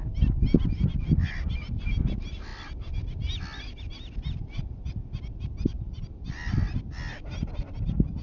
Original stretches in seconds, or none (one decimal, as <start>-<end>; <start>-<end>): 0.0-8.2